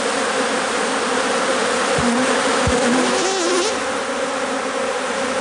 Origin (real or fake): real